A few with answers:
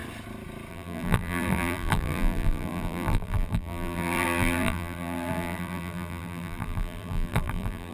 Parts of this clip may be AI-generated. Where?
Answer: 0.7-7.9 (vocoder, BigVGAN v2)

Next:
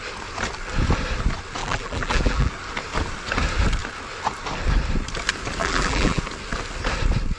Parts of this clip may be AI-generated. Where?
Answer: 1.6-2.5 (vocoder, BigVGAN v2); 5.6-6.2